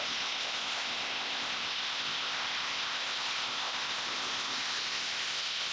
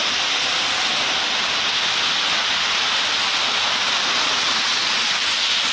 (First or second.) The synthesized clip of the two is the first